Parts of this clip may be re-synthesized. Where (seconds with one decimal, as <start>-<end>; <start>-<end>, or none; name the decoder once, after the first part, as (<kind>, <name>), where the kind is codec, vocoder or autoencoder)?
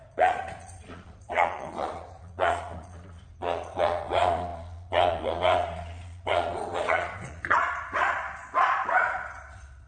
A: 0.0-9.9 (vocoder, Vocos)